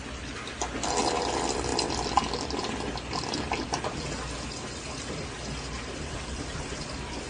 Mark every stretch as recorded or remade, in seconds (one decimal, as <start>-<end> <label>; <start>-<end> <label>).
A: 0.0-7.3 recorded